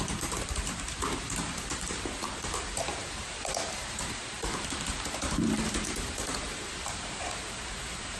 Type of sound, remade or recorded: remade